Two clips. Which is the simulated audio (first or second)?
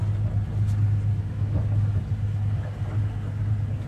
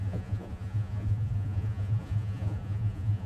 second